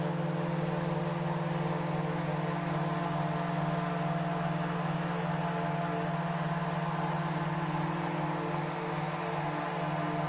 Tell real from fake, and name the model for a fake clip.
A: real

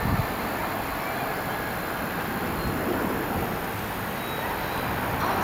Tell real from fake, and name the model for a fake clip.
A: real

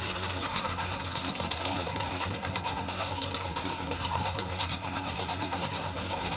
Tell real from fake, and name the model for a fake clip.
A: fake, codec, SNAC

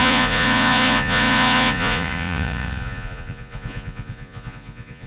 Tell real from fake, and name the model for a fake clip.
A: fake, vocoder, Vocos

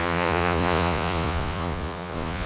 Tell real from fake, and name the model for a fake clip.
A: fake, vocoder, Vocos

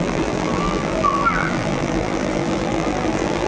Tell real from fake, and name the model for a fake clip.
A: fake, vocoder, BigVGAN v2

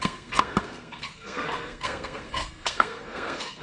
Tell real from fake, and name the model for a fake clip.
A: fake, codec, SNAC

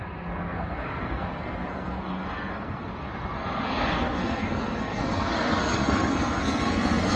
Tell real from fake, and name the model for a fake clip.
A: fake, codec, SNAC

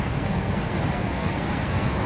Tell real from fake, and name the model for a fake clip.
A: fake, codec, SNAC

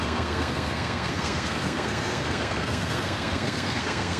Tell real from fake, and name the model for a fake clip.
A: fake, codec, SNAC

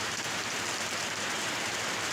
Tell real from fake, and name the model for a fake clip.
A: fake, vocoder, BigVGAN v2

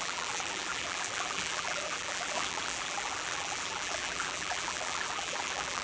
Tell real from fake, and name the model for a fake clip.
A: fake, vocoder, BigVGAN v2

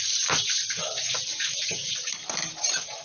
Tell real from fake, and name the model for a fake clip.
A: real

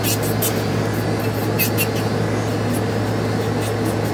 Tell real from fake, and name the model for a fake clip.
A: real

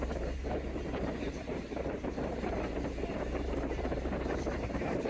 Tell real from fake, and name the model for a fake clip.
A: fake, vocoder, BigVGAN v2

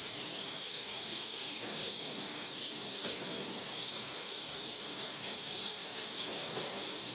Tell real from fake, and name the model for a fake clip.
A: fake, codec, DAC